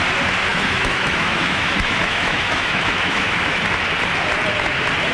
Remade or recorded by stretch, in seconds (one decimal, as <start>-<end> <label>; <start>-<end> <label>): 0.0-0.5 recorded; 0.5-3.6 remade; 3.6-5.1 recorded